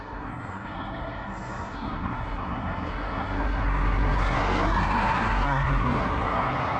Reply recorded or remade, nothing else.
remade